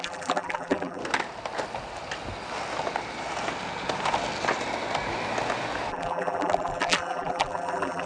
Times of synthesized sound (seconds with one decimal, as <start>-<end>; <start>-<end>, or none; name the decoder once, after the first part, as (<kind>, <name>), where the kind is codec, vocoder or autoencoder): 0.0-1.0 (vocoder, BigVGAN v2); 5.9-8.1